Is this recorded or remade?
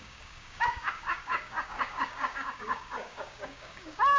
remade